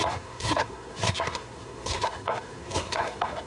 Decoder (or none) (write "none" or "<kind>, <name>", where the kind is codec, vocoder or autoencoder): codec, SNAC